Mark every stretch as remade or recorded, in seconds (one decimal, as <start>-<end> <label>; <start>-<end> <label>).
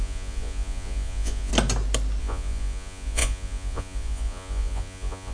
0.0-1.5 remade; 1.5-2.2 recorded; 2.2-5.3 remade